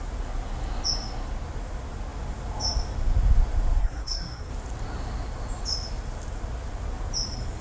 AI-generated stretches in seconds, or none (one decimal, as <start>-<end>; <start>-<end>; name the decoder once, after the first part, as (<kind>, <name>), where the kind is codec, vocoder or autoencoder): 3.8-4.5 (codec, SNAC)